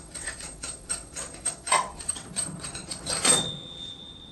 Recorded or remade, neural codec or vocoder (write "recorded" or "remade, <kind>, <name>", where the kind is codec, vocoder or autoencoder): remade, vocoder, WaveNeXt